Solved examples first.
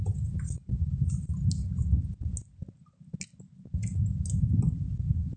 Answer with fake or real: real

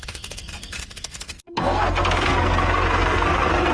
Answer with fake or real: fake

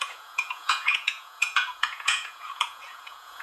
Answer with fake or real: fake